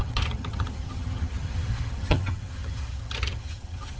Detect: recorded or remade remade